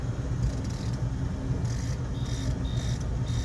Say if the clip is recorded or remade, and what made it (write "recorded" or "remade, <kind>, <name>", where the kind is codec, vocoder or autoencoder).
recorded